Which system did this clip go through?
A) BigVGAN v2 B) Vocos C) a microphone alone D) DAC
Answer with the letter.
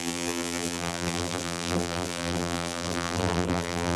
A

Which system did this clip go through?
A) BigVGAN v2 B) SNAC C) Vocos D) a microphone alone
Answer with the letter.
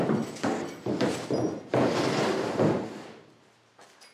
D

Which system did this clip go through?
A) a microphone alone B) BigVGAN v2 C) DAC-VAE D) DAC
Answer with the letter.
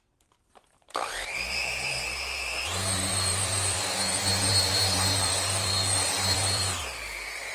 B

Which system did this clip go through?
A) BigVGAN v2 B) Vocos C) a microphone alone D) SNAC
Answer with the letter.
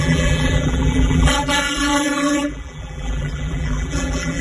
A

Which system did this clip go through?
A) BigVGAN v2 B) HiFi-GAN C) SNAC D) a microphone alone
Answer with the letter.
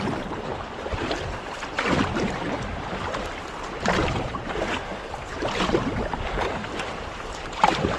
A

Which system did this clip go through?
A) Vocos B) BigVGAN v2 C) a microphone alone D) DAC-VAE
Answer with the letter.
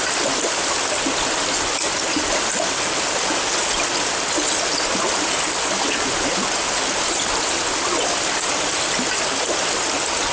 C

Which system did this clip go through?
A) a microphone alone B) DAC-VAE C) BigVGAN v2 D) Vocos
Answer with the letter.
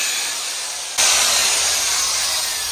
A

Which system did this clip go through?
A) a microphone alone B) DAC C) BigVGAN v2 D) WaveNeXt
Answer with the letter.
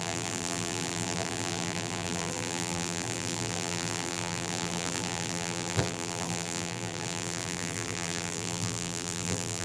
C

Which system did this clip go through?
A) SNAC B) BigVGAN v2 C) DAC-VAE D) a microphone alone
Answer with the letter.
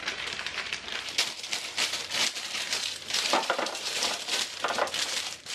B